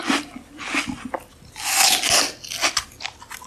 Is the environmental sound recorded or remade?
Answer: recorded